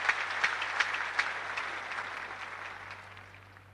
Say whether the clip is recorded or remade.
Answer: recorded